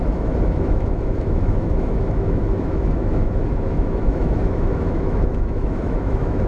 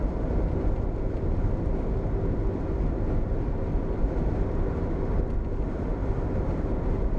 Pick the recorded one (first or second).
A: second